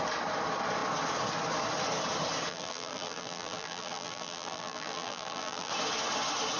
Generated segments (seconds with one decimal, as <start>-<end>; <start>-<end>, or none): 2.5-5.7